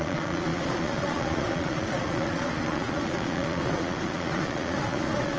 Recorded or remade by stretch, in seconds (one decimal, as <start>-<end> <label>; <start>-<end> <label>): 0.0-5.4 remade